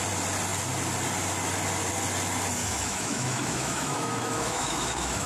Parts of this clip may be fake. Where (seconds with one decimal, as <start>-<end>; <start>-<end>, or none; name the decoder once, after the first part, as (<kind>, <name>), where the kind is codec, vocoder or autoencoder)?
2.6-5.3 (autoencoder, DAC-VAE)